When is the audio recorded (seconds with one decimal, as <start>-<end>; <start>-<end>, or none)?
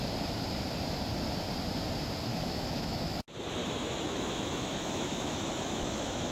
0.0-2.3; 3.2-3.6